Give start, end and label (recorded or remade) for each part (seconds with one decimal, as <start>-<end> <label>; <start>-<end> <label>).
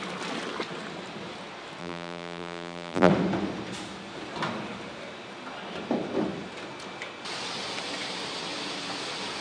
0.0-1.8 recorded; 1.8-3.1 remade; 3.1-9.4 recorded